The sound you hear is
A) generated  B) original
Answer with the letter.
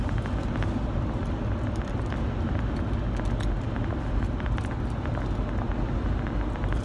B